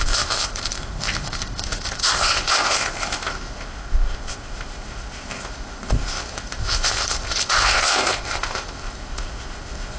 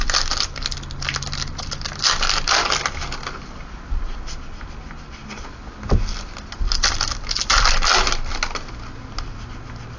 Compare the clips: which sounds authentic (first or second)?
second